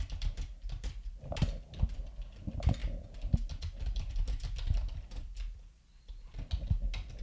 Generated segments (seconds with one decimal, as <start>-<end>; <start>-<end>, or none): none

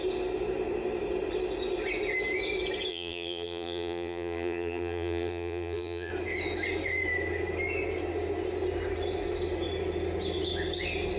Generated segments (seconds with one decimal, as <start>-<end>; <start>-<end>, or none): 2.9-6.1

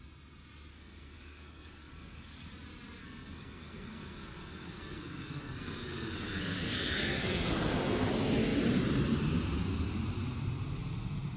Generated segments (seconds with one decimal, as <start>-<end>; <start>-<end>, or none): 0.7-2.5; 3.0-8.1

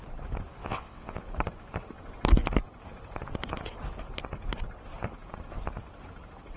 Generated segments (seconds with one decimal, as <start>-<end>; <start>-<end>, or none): 0.6-1.2

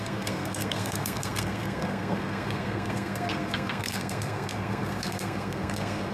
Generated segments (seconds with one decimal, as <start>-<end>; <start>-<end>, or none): 0.0-6.1

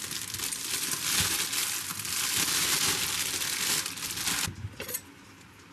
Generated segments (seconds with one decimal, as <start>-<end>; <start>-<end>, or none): none

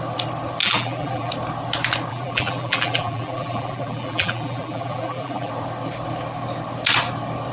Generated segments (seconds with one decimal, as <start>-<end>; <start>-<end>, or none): 0.6-1.3; 2.1-5.5